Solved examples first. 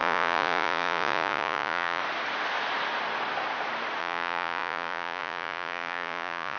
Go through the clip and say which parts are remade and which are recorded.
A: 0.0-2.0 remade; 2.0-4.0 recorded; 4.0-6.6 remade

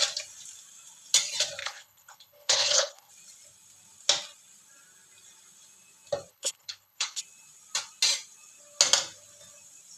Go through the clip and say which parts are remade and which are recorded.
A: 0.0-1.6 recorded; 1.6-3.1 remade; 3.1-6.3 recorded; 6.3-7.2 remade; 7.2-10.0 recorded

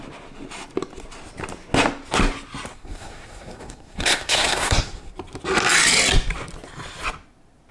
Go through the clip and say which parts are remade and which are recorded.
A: 0.0-2.7 recorded; 2.7-5.1 remade; 5.1-7.7 recorded